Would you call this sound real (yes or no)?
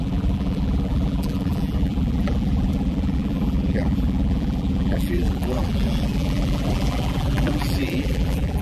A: no